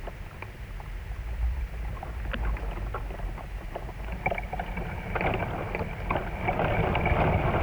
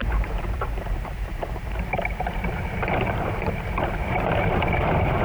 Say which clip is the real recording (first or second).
first